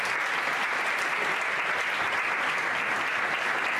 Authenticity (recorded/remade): recorded